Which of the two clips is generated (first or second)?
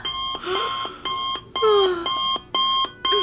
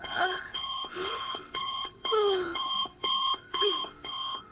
second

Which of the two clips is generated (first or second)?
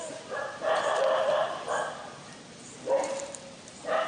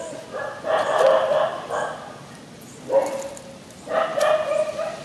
first